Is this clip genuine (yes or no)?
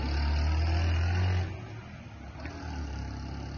yes